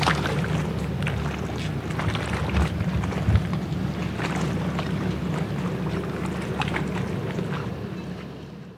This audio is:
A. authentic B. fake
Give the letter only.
A